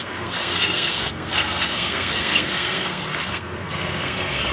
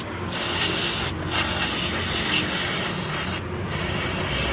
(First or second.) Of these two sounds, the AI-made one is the first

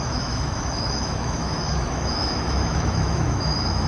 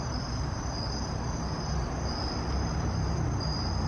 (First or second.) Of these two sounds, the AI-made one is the first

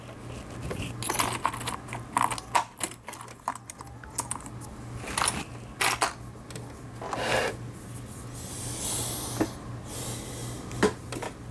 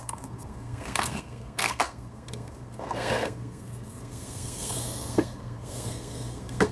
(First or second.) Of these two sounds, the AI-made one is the second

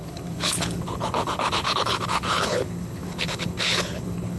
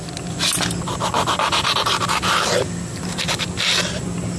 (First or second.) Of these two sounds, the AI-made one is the first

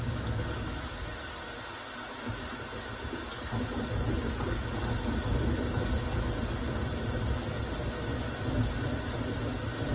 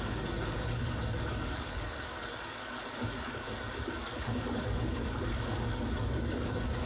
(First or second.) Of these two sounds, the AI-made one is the second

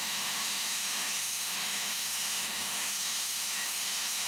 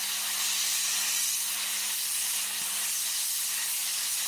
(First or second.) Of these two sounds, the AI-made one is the first